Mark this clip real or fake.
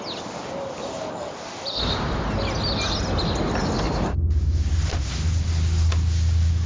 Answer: real